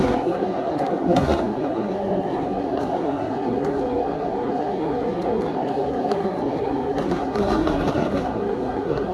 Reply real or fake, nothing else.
fake